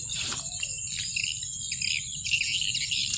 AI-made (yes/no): no